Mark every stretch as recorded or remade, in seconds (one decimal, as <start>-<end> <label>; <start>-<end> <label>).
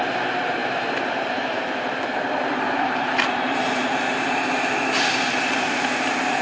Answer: 0.0-0.6 recorded; 0.6-4.4 remade; 4.4-6.4 recorded